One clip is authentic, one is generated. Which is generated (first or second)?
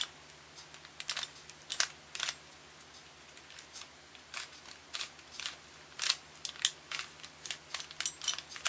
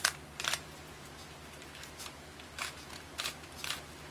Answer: second